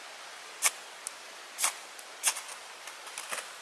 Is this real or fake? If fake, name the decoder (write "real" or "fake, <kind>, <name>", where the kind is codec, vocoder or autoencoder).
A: real